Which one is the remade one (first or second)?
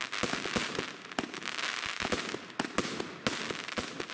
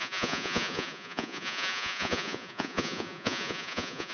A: second